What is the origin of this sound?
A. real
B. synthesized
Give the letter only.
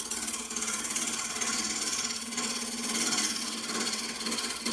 B